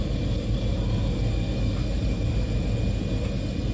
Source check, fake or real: real